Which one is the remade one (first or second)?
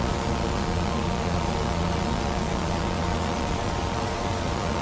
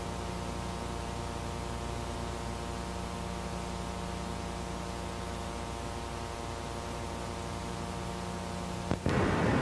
first